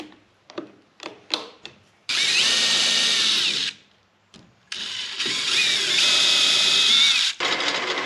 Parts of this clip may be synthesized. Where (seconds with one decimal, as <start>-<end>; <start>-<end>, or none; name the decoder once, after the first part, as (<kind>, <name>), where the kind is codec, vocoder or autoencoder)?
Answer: 2.0-3.2 (vocoder, BigVGAN v2); 3.6-5.7